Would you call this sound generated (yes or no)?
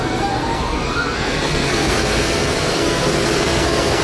yes